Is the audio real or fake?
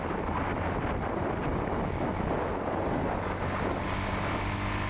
real